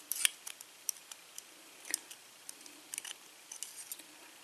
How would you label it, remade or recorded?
recorded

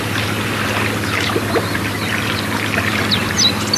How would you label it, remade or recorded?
recorded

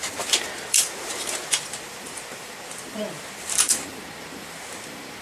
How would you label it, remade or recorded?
remade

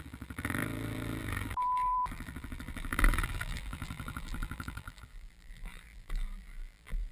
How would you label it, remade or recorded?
remade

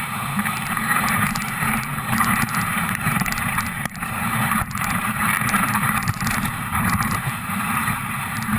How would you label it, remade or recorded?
remade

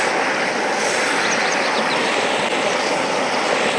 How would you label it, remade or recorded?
recorded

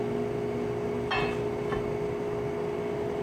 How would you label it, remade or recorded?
recorded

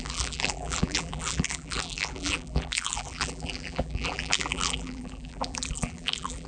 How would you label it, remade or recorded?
remade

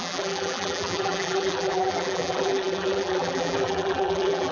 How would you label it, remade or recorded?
remade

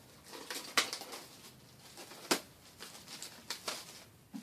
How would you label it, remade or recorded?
recorded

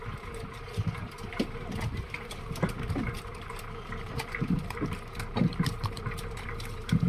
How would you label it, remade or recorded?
remade